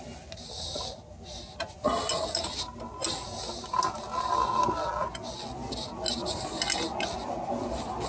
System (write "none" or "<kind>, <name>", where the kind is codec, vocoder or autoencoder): none